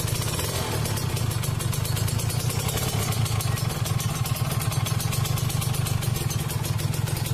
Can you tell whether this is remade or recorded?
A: recorded